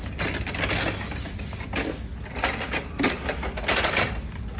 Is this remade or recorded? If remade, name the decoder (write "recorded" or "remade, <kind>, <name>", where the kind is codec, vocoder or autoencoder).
recorded